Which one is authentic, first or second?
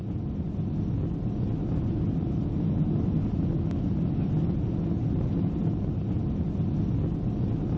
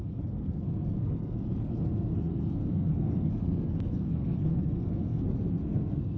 first